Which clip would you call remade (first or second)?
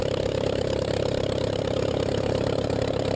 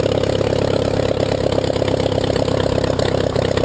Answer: first